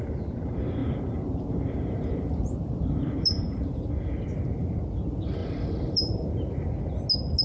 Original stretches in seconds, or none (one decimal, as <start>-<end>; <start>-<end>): 0.0-0.8; 3.9-5.4; 6.7-7.4